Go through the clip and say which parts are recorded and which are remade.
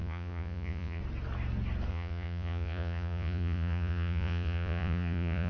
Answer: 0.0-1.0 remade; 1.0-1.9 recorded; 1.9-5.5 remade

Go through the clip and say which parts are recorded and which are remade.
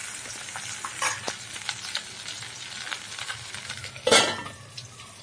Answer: 0.0-5.2 recorded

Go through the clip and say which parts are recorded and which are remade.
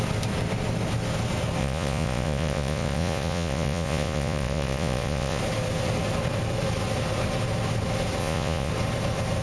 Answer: 0.0-1.6 recorded; 1.6-5.4 remade; 5.4-8.2 recorded; 8.2-8.7 remade; 8.7-9.4 recorded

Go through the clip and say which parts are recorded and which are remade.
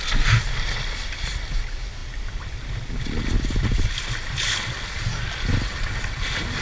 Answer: 0.0-6.6 recorded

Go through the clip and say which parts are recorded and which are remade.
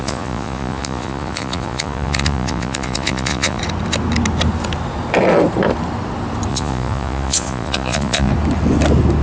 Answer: 0.0-3.6 remade; 3.6-6.5 recorded; 6.5-8.3 remade; 8.3-9.2 recorded